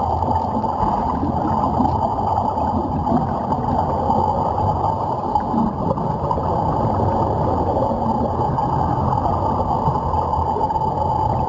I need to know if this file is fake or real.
real